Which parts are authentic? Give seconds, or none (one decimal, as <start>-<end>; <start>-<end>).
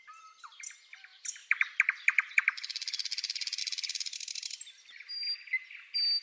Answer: 0.0-6.2